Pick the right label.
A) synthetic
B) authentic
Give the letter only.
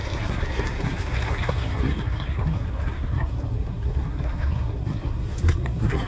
A